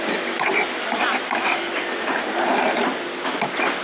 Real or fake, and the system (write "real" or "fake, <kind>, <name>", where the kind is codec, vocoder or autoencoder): real